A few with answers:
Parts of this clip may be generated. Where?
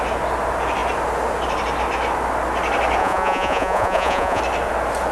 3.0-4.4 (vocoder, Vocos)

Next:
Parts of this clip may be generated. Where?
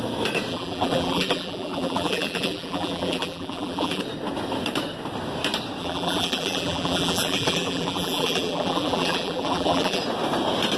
0.5-4.0 (vocoder, BigVGAN v2); 5.8-10.0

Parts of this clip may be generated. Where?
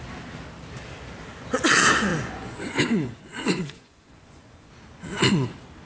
2.1-4.7 (vocoder, Vocos)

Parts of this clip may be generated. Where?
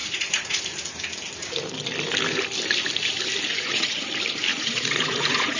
0.0-0.6 (vocoder, Vocos); 3.5-4.1; 4.5-5.6